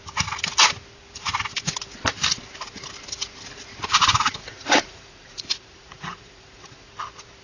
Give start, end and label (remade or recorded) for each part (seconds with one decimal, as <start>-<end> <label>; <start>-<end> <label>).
0.0-4.4 recorded; 4.4-6.9 remade; 6.9-7.4 recorded